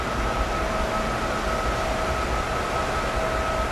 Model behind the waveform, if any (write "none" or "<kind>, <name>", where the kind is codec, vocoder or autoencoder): none